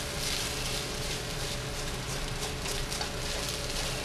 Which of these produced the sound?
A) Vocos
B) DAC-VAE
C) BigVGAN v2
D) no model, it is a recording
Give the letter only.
D